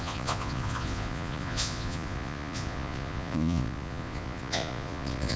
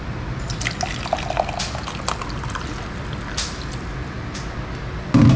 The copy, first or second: first